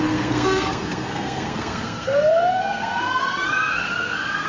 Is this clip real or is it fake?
fake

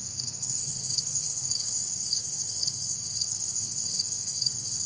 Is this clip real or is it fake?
fake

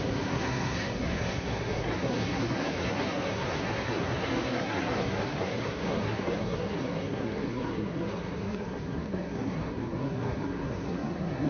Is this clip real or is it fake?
fake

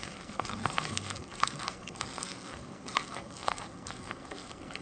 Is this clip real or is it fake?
fake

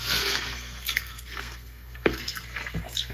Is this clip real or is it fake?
fake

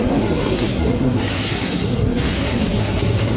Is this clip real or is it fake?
fake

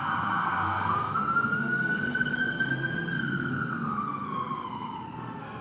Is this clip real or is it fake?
fake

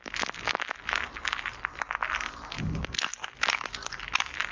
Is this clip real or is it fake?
real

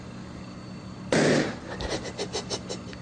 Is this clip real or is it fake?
real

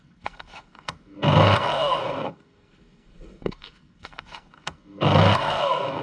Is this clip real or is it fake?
fake